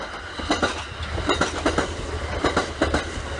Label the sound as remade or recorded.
recorded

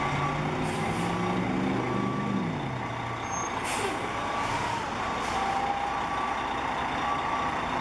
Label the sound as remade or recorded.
recorded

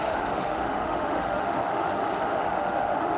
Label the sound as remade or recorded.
remade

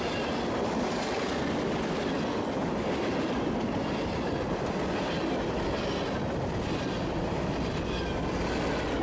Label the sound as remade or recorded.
recorded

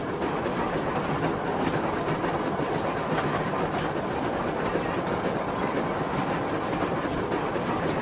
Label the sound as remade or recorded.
recorded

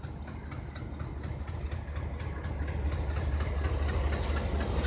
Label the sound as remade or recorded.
recorded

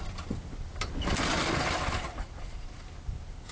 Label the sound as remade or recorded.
recorded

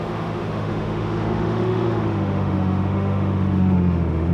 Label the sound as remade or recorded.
remade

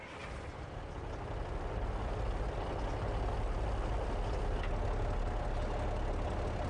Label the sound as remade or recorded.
recorded